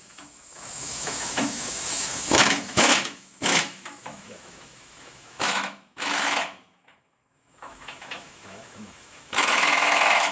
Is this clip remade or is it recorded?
remade